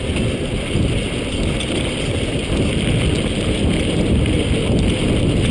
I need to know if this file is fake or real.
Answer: real